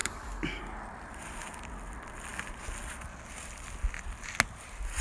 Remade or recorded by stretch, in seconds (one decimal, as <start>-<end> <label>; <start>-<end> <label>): 0.0-0.6 remade; 0.6-5.0 recorded